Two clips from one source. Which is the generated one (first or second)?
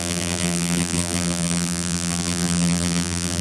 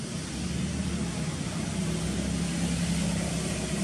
first